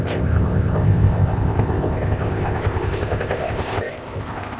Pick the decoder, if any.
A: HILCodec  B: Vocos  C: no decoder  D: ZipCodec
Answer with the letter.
D